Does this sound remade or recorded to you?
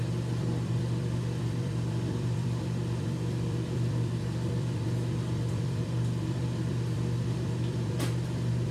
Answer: remade